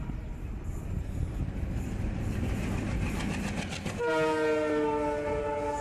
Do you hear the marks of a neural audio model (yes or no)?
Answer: no